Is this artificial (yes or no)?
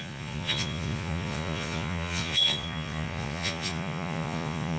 yes